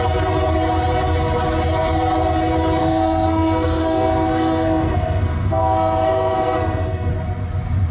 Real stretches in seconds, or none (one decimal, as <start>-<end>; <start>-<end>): 0.0-2.8; 7.1-7.9